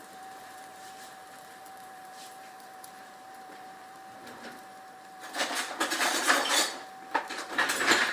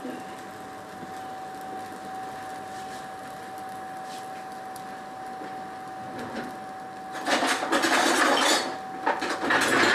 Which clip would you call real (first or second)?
second